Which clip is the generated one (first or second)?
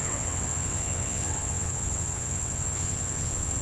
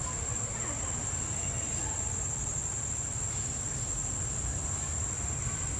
first